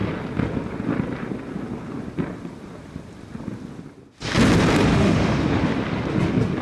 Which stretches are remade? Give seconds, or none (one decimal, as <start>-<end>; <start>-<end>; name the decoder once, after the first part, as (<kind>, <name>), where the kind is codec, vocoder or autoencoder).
4.9-5.4 (autoencoder, DAC-VAE)